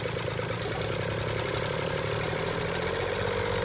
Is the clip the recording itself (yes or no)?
yes